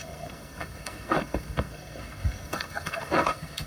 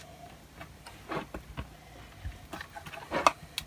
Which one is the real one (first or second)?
second